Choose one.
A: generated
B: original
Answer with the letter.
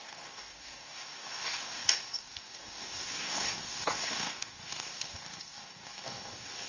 A